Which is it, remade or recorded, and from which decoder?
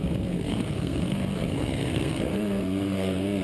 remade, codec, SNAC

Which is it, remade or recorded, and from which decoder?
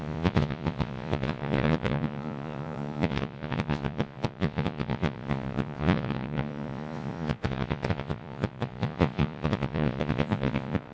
remade, vocoder, Vocos